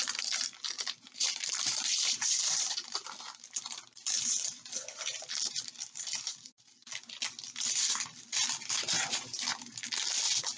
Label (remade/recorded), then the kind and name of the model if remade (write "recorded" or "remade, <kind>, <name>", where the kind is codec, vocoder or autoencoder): recorded